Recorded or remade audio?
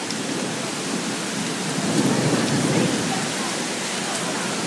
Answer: recorded